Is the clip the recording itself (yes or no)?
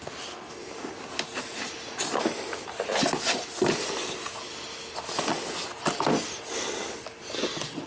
yes